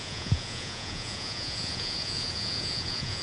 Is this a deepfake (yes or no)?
yes